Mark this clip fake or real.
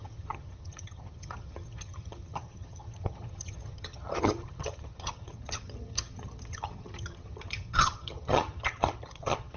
fake